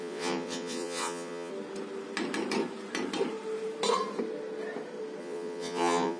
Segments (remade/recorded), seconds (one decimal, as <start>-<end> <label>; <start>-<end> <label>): 0.0-1.5 remade; 1.5-5.2 recorded; 5.2-6.2 remade